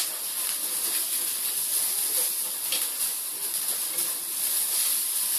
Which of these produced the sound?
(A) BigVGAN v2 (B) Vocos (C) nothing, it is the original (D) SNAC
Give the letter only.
C